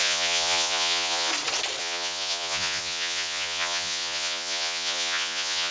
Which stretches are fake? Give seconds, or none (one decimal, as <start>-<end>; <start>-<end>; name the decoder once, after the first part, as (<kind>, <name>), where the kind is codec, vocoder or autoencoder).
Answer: 0.0-1.3 (vocoder, Vocos); 1.8-5.7